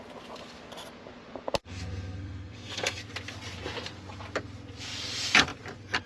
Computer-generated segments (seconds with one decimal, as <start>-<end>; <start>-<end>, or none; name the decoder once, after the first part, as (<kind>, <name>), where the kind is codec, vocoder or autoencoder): 1.6-3.0 (codec, SNAC)